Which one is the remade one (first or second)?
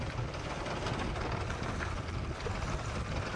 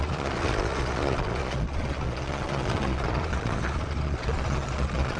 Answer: second